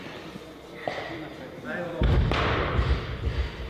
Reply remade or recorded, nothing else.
recorded